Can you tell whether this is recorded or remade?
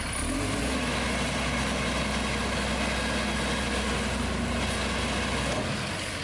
recorded